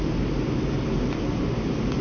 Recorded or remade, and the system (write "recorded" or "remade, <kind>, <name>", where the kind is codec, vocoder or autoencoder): recorded